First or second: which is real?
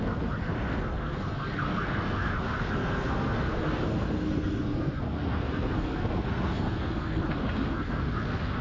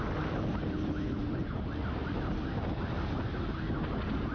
second